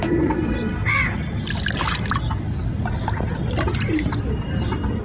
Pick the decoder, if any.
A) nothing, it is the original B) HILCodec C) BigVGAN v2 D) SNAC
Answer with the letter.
A